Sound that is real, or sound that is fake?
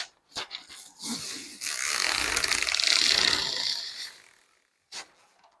real